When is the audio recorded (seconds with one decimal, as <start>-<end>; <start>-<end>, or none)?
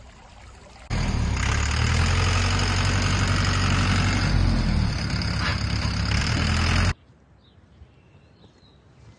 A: 0.0-9.2